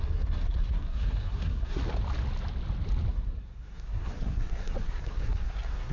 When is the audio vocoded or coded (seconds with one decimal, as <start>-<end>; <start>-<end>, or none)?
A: 0.0-1.8; 3.1-5.9

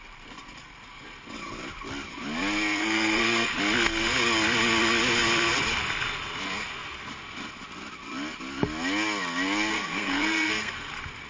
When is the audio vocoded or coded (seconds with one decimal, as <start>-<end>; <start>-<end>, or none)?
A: 2.8-3.5; 9.7-10.9

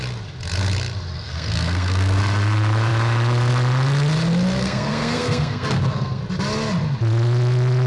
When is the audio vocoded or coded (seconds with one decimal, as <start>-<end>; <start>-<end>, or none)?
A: 1.2-2.2; 4.6-6.2

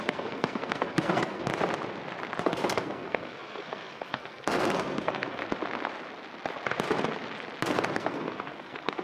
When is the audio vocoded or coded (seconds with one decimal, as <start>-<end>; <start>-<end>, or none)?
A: 0.0-1.5; 2.4-5.4; 7.7-9.0

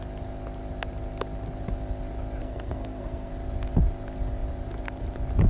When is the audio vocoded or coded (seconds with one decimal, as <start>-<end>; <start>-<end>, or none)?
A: 2.4-3.3